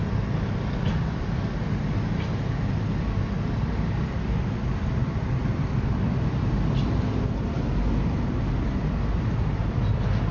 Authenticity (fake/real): real